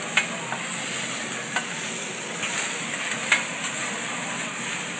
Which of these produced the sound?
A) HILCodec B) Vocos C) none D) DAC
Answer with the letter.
C